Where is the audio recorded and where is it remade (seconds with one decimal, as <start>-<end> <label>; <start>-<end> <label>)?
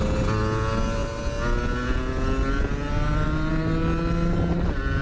0.0-5.0 recorded